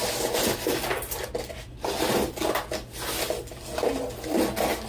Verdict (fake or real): real